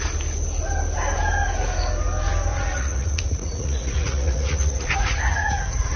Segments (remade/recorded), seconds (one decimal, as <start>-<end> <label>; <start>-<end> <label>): 0.0-2.5 recorded; 2.5-6.0 remade